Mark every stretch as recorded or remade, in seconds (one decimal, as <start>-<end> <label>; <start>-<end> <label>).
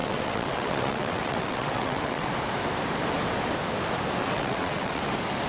0.0-2.3 remade; 2.3-4.2 recorded; 4.2-5.1 remade; 5.1-5.5 recorded